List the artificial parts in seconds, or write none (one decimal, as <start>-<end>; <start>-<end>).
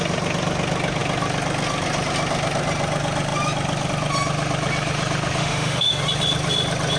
5.4-6.0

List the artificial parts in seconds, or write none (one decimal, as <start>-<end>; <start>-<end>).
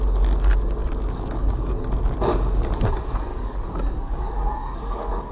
0.8-1.7; 3.3-5.3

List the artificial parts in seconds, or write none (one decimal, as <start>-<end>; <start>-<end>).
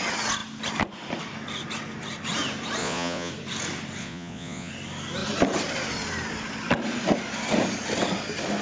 2.8-3.3; 4.0-4.7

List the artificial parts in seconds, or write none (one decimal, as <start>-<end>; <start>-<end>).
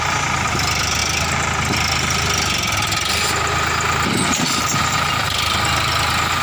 none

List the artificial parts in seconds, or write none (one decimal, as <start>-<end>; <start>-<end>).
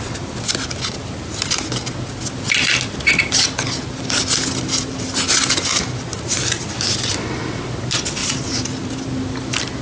1.0-1.6; 6.1-6.8; 8.2-8.9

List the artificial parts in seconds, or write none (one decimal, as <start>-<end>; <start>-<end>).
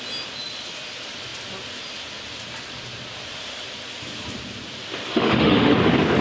5.1-5.7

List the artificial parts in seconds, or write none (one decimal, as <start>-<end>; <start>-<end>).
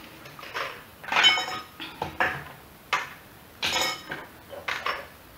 none